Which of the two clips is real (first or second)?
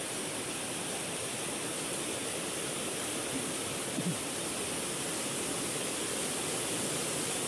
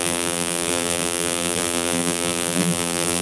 first